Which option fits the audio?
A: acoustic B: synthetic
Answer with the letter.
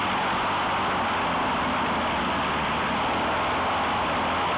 A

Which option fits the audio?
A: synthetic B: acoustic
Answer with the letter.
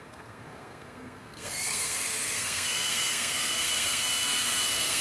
A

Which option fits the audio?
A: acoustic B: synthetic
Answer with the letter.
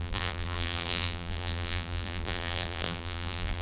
B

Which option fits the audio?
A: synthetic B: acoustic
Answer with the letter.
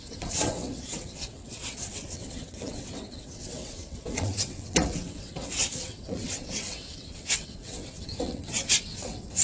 A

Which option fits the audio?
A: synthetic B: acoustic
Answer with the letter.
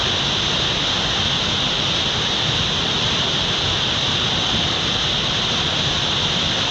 B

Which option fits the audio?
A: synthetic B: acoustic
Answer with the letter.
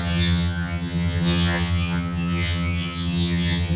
A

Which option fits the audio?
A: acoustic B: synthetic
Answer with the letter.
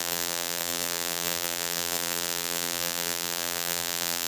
B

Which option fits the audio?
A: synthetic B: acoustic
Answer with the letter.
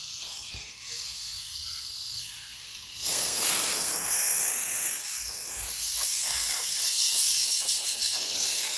A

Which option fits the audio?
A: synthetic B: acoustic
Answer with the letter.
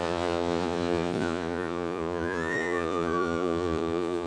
A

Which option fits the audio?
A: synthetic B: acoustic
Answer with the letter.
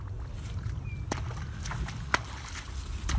B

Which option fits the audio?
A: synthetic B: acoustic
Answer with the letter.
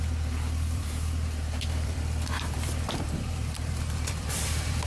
A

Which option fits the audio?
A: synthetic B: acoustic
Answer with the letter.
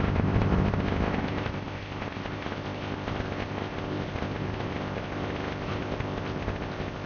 A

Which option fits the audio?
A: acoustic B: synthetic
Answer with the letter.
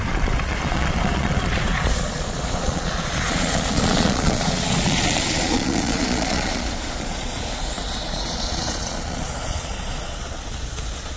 B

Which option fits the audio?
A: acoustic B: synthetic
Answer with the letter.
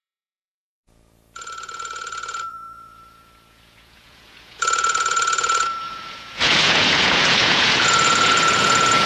B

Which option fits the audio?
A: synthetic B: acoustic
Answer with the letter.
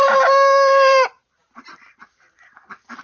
A